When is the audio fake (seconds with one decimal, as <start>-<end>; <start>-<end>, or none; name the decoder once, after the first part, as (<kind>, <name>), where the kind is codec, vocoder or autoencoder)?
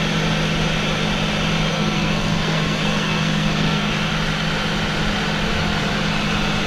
1.7-3.9 (codec, SNAC)